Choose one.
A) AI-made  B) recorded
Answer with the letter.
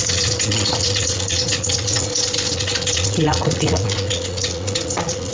A